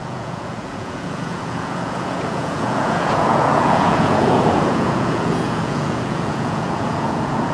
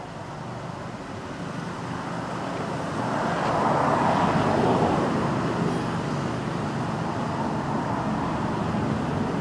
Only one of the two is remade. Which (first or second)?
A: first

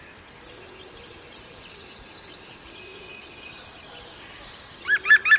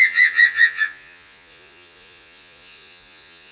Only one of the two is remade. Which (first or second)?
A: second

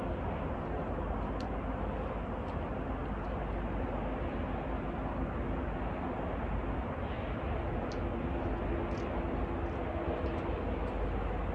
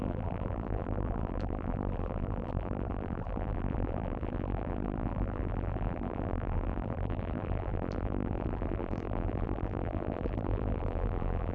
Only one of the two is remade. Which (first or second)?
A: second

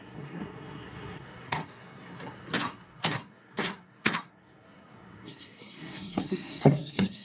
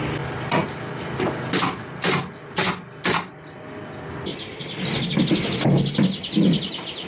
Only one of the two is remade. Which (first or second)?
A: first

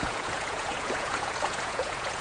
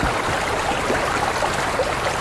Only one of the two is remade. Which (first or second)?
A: first